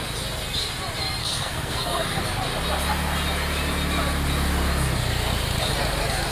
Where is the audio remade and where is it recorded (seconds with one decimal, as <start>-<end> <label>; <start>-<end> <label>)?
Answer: 0.0-1.2 recorded; 1.2-2.2 remade; 2.2-6.3 recorded